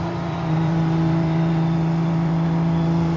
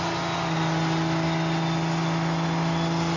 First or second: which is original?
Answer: second